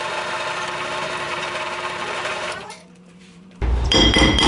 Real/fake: fake